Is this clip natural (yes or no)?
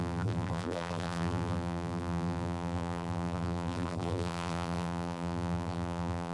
no